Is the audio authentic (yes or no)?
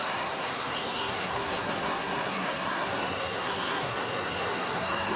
no